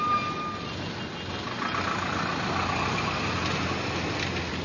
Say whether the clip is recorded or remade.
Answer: recorded